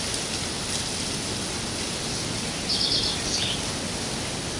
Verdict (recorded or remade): recorded